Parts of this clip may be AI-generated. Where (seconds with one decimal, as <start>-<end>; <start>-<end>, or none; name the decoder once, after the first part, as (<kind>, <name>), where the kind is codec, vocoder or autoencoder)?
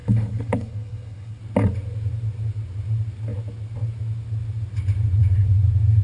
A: 0.0-1.4 (codec, HILCodec)